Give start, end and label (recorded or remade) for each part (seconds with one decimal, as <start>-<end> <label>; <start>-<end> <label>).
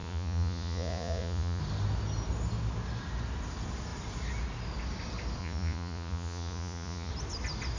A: 0.0-1.6 remade; 1.6-5.4 recorded; 5.4-7.1 remade; 7.1-7.8 recorded